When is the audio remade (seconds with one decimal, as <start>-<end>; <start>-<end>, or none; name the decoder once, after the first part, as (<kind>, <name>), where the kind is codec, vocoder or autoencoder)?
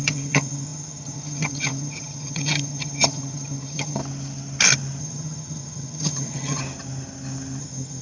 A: 0.0-4.0 (vocoder, HiFi-GAN); 5.0-6.6; 7.6-8.0